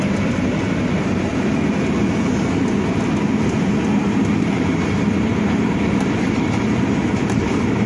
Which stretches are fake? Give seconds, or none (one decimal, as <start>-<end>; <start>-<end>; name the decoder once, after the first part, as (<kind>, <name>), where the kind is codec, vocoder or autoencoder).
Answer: 0.0-1.3 (vocoder, BigVGAN v2); 4.4-7.9

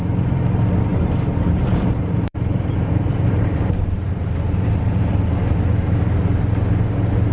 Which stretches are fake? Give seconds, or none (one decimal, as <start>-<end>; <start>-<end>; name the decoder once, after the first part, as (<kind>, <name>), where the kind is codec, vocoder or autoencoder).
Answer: 0.9-5.3 (vocoder, BigVGAN v2)

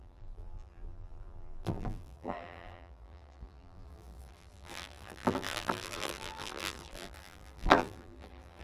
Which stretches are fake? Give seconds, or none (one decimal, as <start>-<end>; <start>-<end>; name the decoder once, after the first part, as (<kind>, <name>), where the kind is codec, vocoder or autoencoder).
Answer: 0.0-8.6 (vocoder, BigVGAN v2)

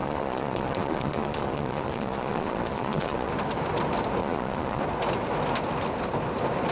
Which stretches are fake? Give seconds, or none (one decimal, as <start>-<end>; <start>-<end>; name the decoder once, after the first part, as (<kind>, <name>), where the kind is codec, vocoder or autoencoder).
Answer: 0.0-3.3 (vocoder, Vocos); 4.2-4.8

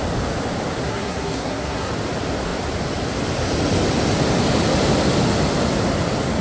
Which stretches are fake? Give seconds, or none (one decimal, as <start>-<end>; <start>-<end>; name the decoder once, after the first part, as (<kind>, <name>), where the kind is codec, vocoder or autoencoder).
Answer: 0.8-1.9 (codec, SNAC)

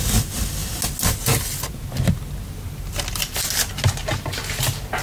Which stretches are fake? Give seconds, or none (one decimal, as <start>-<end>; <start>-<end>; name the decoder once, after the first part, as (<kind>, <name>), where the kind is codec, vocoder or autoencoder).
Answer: none

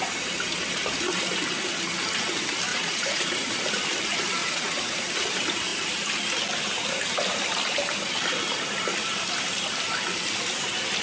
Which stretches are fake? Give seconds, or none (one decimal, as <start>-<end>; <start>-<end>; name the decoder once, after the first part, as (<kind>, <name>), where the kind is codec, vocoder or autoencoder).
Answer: 2.7-3.5 (vocoder, Vocos); 4.4-5.1